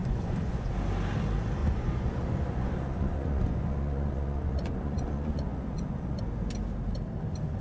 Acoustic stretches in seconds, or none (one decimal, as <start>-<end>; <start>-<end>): 0.7-1.6; 6.2-7.6